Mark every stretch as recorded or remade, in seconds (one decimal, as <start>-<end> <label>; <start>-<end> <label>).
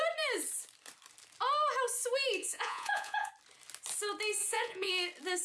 0.0-2.4 recorded; 2.4-3.3 remade; 3.3-4.4 recorded; 4.4-4.9 remade; 4.9-5.4 recorded